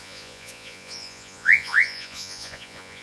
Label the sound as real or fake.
fake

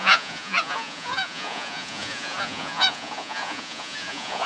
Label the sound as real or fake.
fake